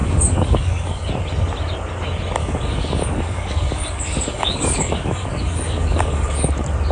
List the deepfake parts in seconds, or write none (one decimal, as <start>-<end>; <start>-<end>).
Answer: 0.0-1.1; 2.4-6.5